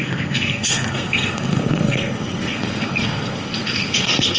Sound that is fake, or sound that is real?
fake